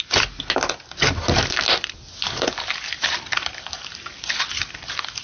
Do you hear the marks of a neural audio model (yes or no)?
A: no